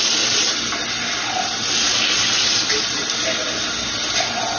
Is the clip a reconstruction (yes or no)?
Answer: no